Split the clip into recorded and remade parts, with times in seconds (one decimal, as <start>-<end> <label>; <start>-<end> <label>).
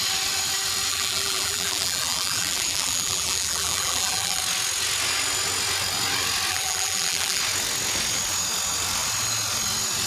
0.0-0.9 recorded; 0.9-4.4 remade; 4.4-6.5 recorded; 6.5-7.4 remade; 7.4-10.1 recorded